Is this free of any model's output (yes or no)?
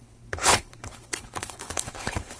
no